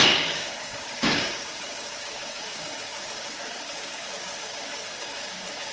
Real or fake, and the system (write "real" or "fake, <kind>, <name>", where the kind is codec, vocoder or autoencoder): fake, codec, DAC